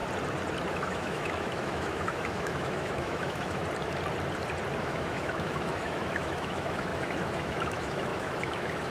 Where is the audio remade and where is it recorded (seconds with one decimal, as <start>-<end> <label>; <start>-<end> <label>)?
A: 0.0-0.7 recorded; 0.7-3.6 remade; 3.6-4.8 recorded; 4.8-8.9 remade

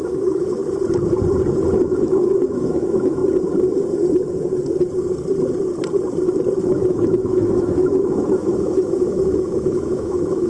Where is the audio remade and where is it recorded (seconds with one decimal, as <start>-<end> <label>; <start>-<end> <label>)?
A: 0.0-0.6 remade; 0.6-1.8 recorded; 1.8-3.2 remade; 3.2-6.6 recorded; 6.6-10.5 remade

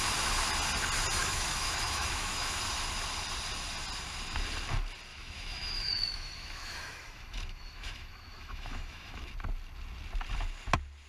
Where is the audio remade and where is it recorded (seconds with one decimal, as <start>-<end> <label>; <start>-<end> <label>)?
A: 0.0-1.2 recorded; 1.2-2.6 remade; 2.6-5.1 recorded; 5.1-9.3 remade; 9.3-11.1 recorded

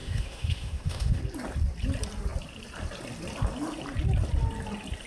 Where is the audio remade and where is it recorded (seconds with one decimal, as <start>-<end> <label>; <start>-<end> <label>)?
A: 0.0-1.2 remade; 1.2-5.1 recorded

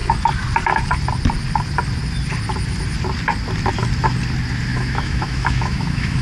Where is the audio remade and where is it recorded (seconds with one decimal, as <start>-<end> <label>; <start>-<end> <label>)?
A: 0.0-4.7 recorded; 4.7-6.2 remade

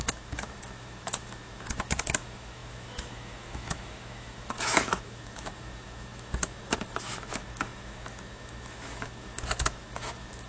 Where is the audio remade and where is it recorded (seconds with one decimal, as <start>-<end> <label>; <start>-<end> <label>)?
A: 0.0-10.5 remade

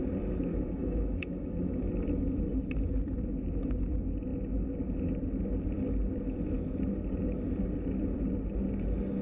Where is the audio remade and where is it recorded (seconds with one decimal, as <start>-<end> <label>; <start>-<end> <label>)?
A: 0.0-0.5 recorded; 0.5-1.9 remade; 1.9-9.2 recorded